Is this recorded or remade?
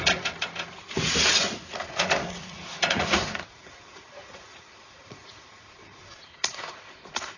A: remade